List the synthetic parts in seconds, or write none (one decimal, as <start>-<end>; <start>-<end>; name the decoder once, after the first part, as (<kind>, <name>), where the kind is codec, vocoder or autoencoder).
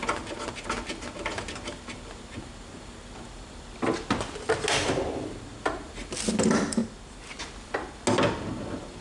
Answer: none